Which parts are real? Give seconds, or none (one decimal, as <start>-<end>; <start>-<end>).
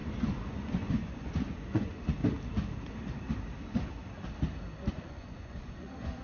2.2-4.9